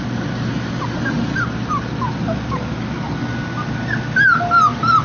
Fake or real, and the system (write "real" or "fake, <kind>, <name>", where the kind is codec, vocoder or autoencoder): real